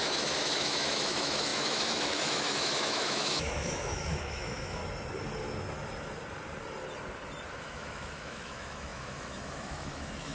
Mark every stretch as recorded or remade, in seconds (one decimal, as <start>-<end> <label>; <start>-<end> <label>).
0.0-4.8 remade; 4.8-7.6 recorded; 7.6-10.3 remade